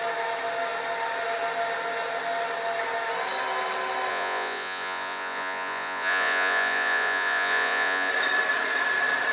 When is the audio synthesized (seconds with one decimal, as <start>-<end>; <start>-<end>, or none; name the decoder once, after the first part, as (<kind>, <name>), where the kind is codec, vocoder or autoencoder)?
4.1-8.1 (vocoder, Vocos)